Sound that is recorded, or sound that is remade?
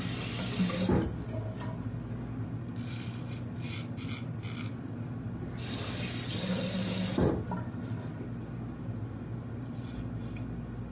recorded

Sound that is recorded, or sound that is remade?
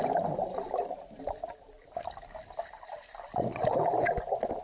recorded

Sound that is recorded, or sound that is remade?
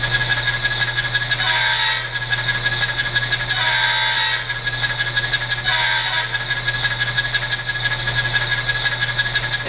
recorded